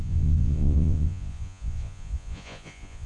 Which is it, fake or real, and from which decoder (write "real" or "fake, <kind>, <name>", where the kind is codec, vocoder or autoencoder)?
fake, vocoder, Vocos